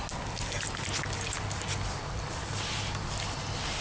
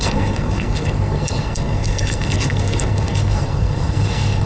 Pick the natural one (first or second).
first